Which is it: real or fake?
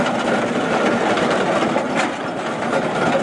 real